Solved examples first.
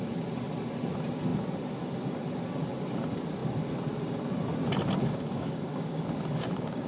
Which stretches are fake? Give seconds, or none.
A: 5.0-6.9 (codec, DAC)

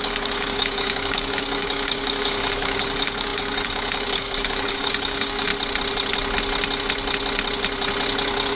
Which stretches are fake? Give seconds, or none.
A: 0.0-5.5 (codec, DAC)

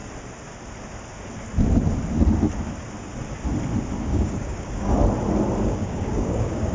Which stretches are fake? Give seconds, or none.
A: 4.0-5.0 (codec, DAC); 5.6-6.7

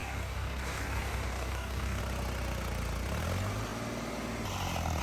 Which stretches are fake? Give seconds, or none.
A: 0.0-2.0 (codec, DAC)

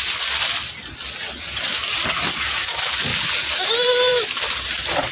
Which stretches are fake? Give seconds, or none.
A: none

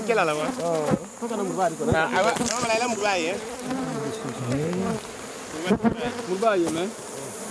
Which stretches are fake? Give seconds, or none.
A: none

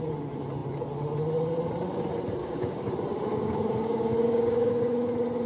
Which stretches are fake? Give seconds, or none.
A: 2.4-2.9 (codec, DAC); 3.3-5.1

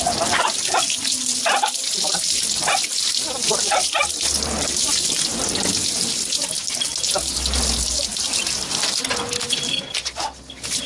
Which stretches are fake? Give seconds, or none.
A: none